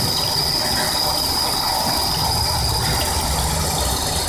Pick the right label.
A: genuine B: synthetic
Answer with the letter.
A